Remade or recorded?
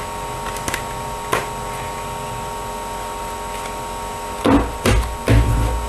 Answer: recorded